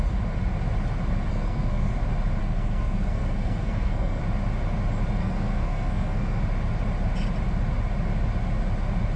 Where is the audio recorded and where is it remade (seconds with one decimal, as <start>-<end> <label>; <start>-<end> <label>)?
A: 0.0-1.3 recorded; 1.3-1.9 remade; 1.9-2.4 recorded; 2.4-4.2 remade; 4.2-5.2 recorded; 5.2-6.4 remade; 6.4-9.2 recorded